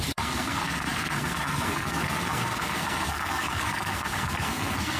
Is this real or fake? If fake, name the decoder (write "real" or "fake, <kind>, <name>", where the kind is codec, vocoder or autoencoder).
fake, codec, SNAC